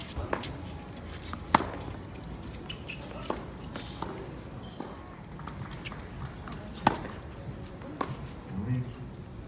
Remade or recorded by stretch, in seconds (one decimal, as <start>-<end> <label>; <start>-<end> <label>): 0.0-9.5 recorded